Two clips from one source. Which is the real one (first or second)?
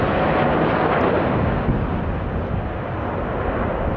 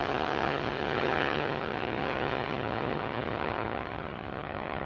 first